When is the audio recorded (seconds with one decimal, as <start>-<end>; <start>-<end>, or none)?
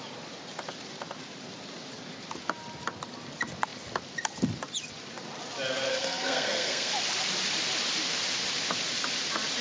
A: 0.0-5.9; 6.9-9.6